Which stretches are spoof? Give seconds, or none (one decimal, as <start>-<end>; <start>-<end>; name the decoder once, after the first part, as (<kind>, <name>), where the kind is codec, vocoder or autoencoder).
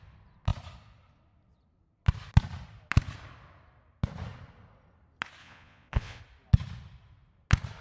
5.4-6.2 (vocoder, Vocos)